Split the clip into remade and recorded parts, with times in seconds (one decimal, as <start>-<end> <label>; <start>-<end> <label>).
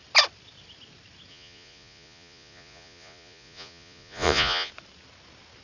0.0-1.3 recorded; 1.3-4.7 remade; 4.7-5.6 recorded